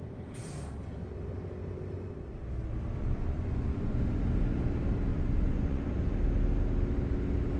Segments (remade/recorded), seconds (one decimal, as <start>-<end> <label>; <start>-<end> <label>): 0.0-3.0 recorded; 3.0-4.0 remade; 4.0-5.1 recorded; 5.1-5.8 remade; 5.8-7.6 recorded